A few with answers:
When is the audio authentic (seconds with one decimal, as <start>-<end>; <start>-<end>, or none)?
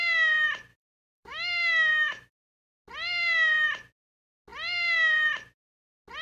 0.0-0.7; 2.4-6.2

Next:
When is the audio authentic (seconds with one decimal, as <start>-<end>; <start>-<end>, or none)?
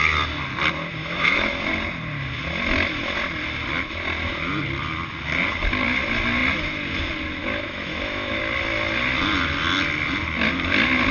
0.0-1.0; 1.7-7.4; 8.4-11.1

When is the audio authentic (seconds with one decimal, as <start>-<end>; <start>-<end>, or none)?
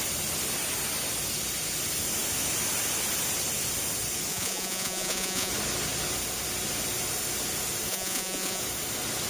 0.0-4.3; 5.5-7.9; 8.6-9.3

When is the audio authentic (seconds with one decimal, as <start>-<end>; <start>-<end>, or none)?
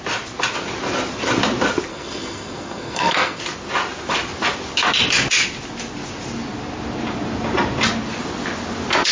0.0-1.9; 3.4-9.1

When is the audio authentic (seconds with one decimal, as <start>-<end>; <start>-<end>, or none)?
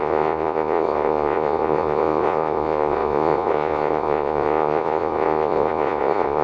none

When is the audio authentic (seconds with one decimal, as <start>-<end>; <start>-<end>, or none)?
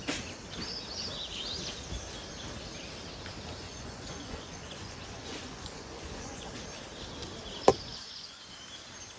0.0-3.6; 6.5-7.7; 8.5-9.2